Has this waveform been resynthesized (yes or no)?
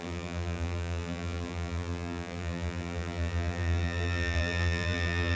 yes